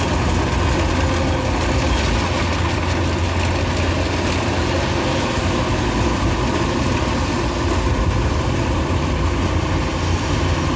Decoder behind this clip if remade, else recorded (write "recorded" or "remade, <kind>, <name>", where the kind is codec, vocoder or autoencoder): recorded